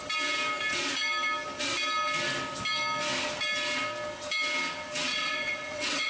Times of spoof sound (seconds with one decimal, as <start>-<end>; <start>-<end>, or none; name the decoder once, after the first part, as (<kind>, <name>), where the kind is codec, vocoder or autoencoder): 5.1-6.1 (vocoder, WaveNeXt)

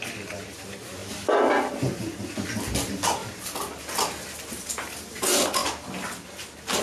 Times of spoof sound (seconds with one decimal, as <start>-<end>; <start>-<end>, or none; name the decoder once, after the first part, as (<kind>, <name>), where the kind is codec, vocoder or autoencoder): none

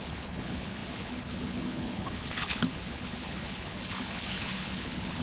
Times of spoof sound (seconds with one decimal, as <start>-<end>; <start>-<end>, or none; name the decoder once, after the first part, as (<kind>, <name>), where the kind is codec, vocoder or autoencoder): 0.0-5.2 (codec, HILCodec)

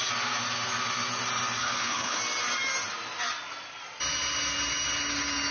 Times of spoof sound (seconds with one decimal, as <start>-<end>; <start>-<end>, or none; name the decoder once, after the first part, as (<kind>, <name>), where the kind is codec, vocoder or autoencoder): 1.6-2.2 (codec, HILCodec)

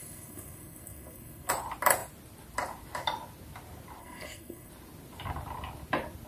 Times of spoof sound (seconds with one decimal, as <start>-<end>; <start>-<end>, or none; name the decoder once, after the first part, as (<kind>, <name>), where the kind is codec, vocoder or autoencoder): 0.0-1.5 (codec, SNAC); 4.0-4.7

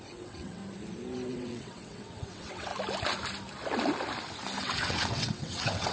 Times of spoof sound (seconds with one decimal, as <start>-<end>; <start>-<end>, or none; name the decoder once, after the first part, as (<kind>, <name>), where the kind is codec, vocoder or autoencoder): 0.0-0.6 (vocoder, WaveNeXt); 1.3-2.7; 4.6-5.9